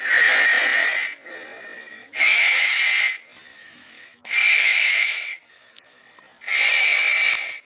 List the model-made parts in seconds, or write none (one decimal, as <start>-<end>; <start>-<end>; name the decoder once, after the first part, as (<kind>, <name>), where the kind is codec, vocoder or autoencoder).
1.9-2.8 (autoencoder, DAC-VAE); 3.5-6.0